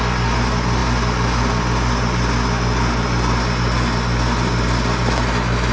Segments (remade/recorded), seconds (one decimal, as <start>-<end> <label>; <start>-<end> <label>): 0.0-5.7 recorded

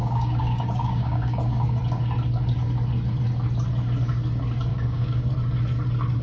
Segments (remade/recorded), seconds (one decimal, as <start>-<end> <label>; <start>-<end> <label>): 0.0-1.8 remade; 1.8-4.7 recorded; 4.7-5.3 remade; 5.3-6.2 recorded